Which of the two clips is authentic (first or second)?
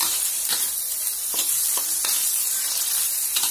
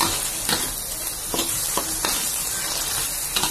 second